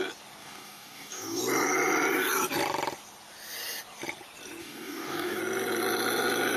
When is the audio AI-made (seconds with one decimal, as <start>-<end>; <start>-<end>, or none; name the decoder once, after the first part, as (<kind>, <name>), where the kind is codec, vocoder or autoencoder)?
0.4-1.4 (codec, DAC); 4.6-5.4